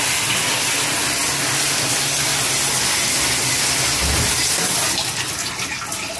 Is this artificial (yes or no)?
no